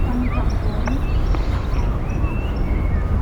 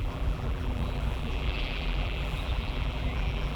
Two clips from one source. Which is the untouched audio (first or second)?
first